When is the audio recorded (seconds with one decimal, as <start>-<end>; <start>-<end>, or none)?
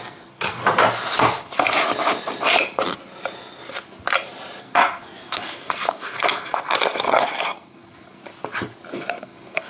0.6-4.6; 8.2-8.9